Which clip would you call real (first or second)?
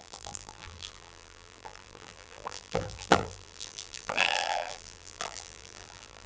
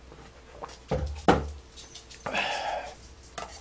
second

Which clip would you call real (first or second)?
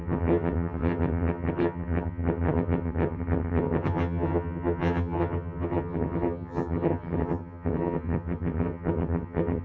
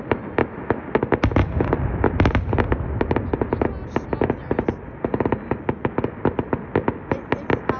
second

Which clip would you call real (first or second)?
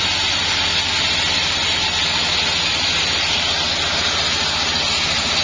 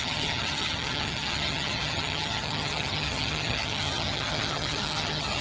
first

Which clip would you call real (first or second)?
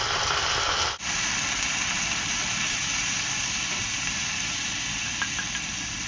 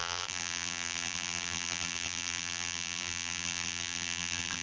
first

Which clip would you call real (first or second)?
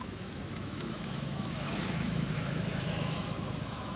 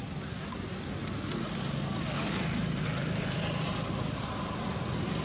second